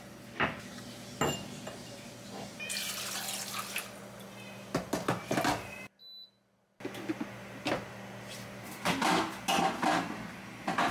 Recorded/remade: recorded